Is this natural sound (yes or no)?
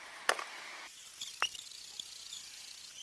yes